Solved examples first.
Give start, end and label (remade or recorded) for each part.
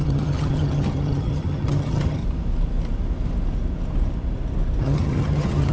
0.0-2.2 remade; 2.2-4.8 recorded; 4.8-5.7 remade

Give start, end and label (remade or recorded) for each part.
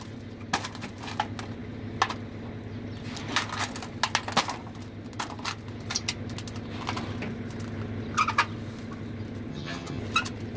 0.0-9.5 recorded; 9.5-10.0 remade; 10.0-10.6 recorded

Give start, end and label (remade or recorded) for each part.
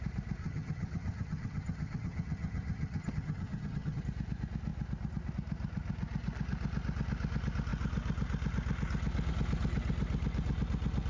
0.0-0.4 recorded; 0.4-4.0 remade; 4.0-11.1 recorded